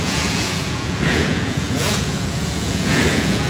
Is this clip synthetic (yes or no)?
yes